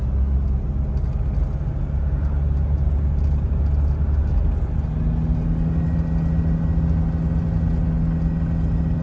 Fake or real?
real